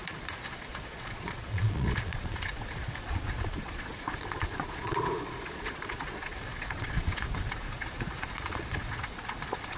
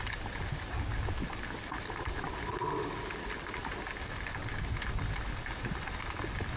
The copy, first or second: first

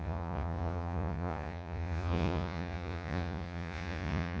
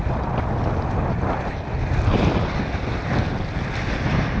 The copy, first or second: first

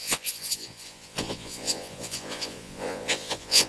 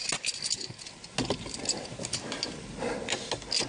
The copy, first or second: first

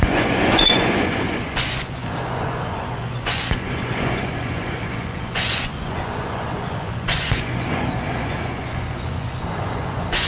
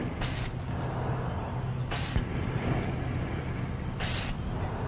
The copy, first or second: first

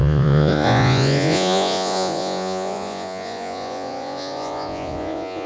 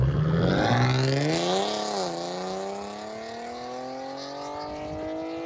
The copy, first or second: first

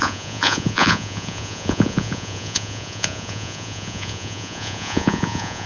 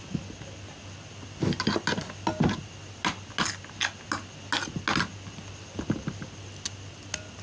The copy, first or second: first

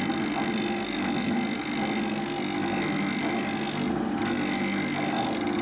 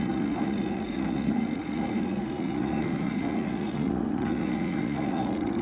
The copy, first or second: second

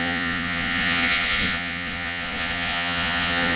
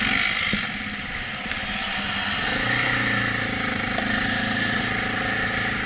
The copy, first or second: first